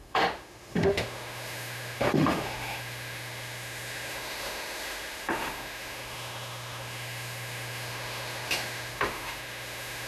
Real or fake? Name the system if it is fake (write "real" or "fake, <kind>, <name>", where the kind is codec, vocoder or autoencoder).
fake, autoencoder, DAC-VAE